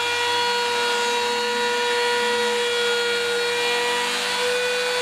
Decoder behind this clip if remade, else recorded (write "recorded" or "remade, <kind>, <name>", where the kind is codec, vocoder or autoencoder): recorded